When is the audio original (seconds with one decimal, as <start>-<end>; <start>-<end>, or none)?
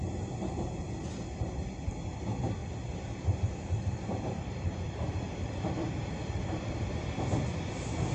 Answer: 0.0-2.6; 7.1-8.1